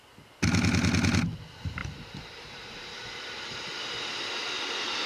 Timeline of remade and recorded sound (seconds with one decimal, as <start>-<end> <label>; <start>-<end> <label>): 0.0-1.8 recorded; 1.8-3.6 remade; 3.6-5.1 recorded